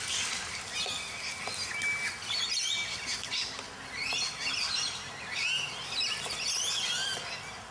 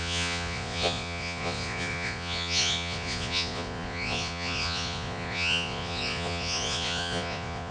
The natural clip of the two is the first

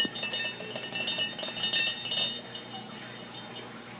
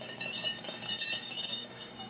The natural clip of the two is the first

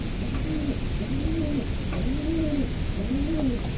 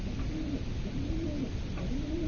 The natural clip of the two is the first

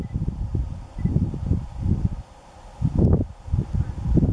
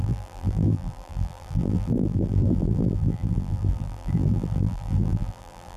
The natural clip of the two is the first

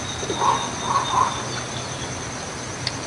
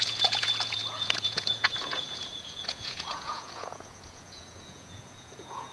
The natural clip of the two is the first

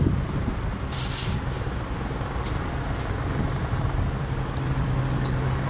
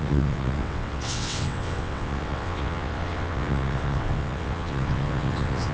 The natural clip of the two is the first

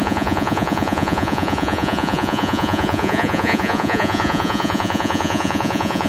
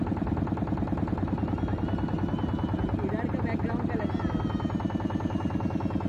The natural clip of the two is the second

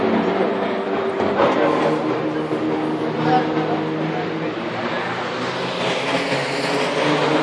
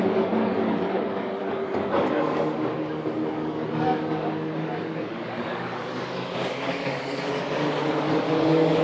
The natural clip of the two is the first